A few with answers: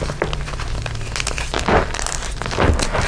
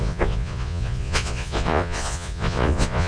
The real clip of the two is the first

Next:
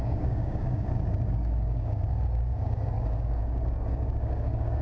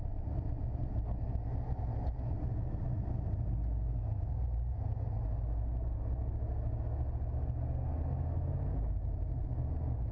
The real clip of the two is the second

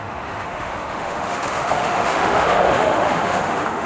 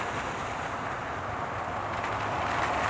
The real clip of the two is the second